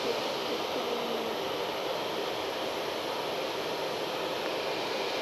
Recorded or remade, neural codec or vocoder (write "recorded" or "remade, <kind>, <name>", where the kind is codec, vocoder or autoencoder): recorded